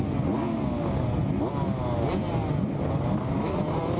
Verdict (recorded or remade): recorded